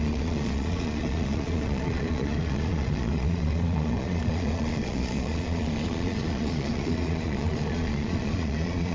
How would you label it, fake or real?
fake